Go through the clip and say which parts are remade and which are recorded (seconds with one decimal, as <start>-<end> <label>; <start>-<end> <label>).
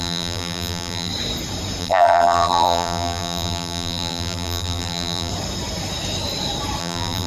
0.0-1.1 remade; 1.1-1.8 recorded; 1.8-5.3 remade; 5.3-6.8 recorded; 6.8-7.3 remade